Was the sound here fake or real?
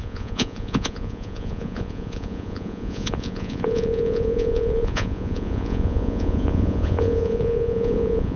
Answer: fake